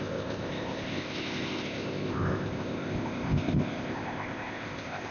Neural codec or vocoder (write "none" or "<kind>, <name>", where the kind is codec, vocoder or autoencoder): codec, ZipCodec